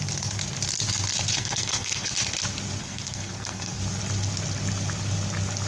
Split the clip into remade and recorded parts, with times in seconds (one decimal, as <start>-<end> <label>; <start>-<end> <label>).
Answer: 0.0-1.3 recorded; 1.3-2.1 remade; 2.1-2.8 recorded; 2.8-3.8 remade; 3.8-5.7 recorded